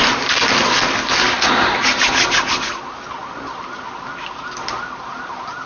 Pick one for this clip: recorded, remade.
remade